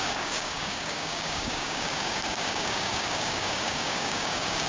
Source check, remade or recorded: remade